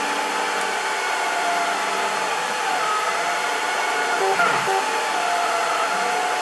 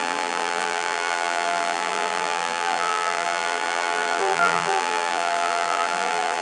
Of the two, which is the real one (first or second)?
first